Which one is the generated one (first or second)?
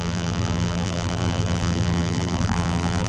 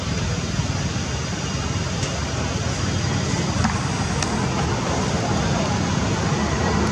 first